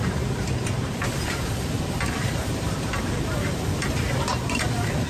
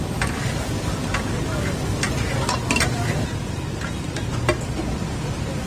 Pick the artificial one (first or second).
first